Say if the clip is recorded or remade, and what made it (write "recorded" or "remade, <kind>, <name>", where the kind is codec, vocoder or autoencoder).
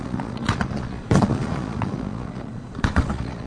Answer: remade, vocoder, Vocos